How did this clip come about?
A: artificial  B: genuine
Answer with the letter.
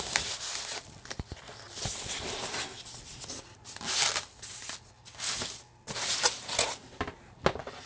B